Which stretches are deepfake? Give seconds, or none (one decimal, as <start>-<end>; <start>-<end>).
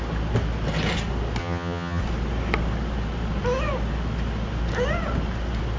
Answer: 1.4-2.0